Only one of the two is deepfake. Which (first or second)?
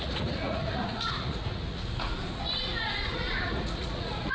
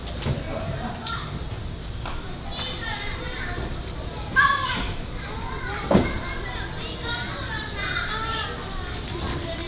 first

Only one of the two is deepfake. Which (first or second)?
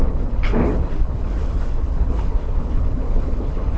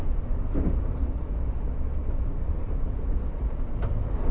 first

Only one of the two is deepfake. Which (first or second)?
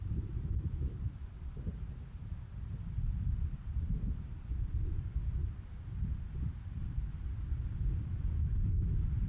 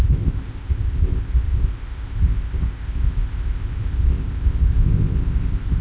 second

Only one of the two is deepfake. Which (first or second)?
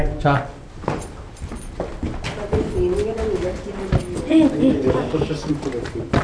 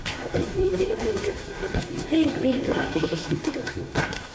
second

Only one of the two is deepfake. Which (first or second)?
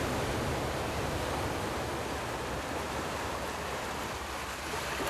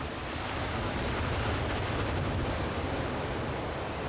second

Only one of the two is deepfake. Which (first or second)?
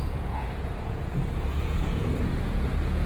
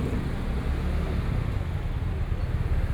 first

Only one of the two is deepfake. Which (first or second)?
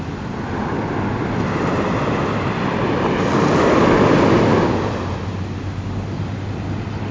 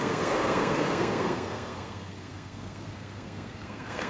second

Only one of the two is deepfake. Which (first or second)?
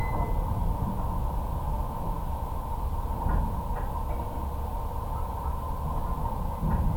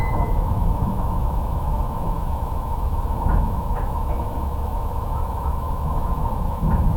second